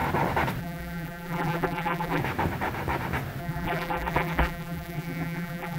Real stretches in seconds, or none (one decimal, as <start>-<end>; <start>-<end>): 0.0-0.6; 2.2-3.4